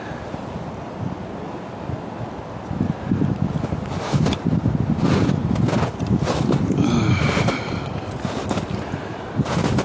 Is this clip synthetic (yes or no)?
no